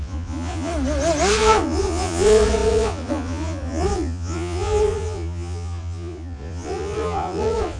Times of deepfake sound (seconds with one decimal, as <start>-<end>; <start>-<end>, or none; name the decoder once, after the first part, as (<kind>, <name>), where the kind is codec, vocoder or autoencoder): 0.0-0.7 (vocoder, Vocos); 1.3-7.8